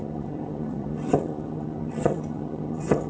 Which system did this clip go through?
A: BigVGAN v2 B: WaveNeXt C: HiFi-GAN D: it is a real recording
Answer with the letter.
C